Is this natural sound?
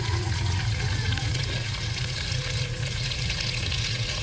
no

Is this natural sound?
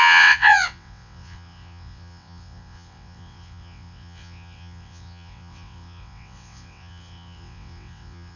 no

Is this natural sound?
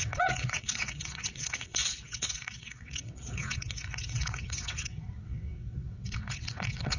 no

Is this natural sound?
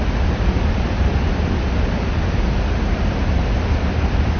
yes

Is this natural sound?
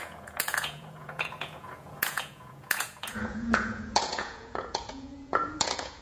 no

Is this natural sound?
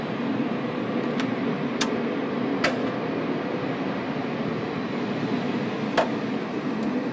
yes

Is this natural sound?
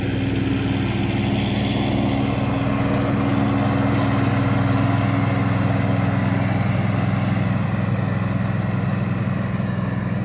yes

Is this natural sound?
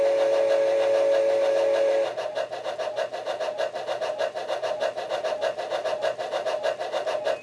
yes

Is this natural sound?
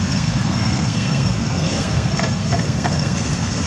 no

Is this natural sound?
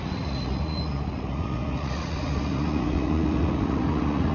no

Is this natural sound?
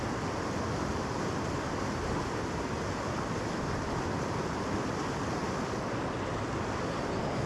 yes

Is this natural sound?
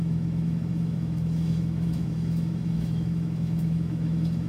no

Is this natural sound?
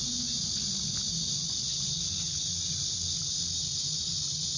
yes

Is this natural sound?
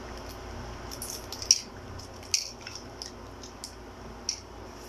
yes